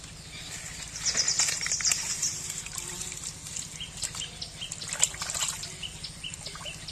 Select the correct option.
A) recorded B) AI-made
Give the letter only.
A